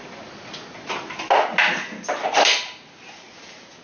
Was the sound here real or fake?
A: real